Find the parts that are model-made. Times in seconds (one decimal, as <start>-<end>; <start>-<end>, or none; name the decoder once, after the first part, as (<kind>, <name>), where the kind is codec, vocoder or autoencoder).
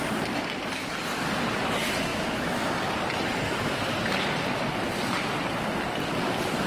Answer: 2.1-2.6 (autoencoder, DAC-VAE)